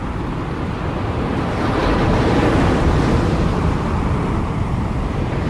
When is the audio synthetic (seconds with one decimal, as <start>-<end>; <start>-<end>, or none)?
none